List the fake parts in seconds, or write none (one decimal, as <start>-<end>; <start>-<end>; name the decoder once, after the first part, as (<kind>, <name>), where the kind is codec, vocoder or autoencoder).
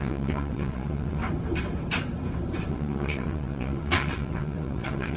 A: 0.0-1.2 (vocoder, WaveNeXt); 2.7-5.2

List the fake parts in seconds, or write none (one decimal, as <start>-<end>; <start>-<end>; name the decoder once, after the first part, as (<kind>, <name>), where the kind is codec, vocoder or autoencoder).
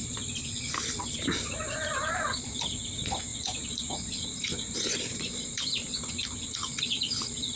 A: 0.0-0.7 (vocoder, BigVGAN v2); 3.3-6.1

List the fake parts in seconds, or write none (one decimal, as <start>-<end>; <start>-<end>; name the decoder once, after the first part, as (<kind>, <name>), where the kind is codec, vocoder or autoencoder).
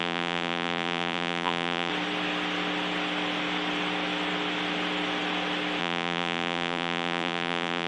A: 0.0-1.9 (vocoder, BigVGAN v2); 5.8-7.9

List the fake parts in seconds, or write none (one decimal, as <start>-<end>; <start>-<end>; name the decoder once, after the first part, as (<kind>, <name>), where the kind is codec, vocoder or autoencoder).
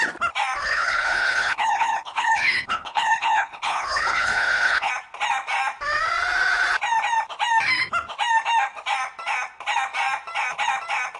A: 0.6-4.9 (codec, HILCodec)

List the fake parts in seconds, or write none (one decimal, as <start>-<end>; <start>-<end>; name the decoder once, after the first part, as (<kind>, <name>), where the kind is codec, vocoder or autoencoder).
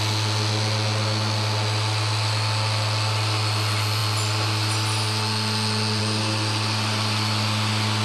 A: none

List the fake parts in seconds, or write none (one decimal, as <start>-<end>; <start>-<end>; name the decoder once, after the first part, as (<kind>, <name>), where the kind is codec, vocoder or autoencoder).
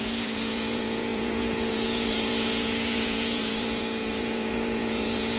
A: 0.0-5.4 (vocoder, Vocos)